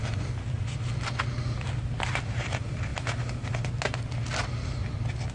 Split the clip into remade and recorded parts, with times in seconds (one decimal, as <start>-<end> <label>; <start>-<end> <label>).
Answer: 0.0-5.3 recorded